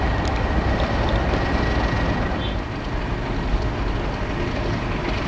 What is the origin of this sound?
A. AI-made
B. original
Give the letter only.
B